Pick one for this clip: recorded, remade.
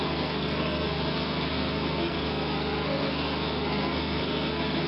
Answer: remade